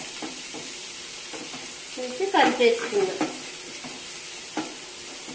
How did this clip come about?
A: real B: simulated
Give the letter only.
A